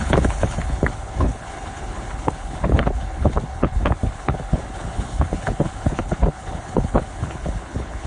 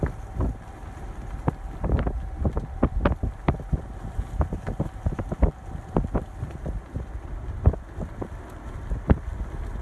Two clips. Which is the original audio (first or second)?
second